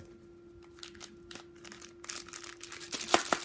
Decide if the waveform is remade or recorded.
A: recorded